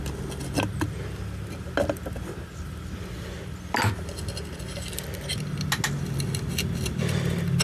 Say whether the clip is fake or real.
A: real